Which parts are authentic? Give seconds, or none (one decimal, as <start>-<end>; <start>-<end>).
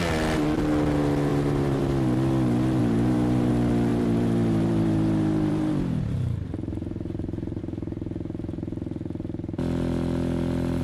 0.0-1.3; 1.8-2.8; 3.5-3.9; 7.6-10.8